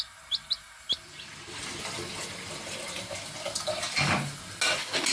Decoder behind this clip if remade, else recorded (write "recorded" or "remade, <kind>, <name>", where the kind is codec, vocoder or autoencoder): recorded